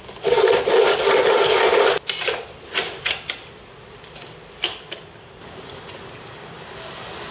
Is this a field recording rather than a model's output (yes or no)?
yes